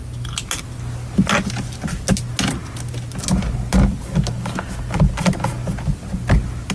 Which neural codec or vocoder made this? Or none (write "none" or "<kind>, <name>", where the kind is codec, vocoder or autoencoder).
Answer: none